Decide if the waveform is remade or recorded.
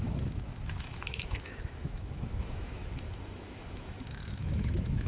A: remade